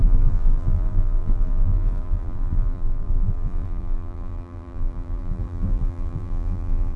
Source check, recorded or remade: remade